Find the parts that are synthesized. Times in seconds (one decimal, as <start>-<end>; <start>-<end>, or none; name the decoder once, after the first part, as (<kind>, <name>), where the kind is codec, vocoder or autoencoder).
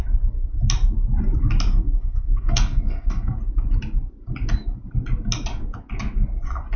1.7-3.4 (codec, SNAC)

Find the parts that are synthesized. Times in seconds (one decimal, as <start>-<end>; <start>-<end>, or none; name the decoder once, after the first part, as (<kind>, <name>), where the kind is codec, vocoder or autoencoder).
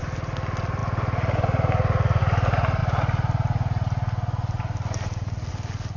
none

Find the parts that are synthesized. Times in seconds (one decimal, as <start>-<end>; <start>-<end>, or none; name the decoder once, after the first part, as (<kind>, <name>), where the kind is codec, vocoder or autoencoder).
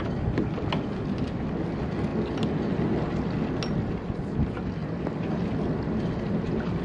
none